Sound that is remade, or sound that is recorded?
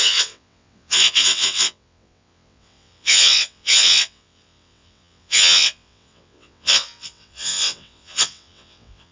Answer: remade